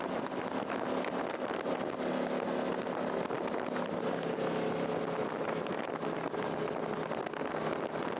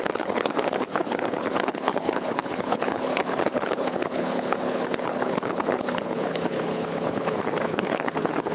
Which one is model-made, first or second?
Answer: second